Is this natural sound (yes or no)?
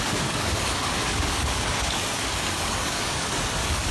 no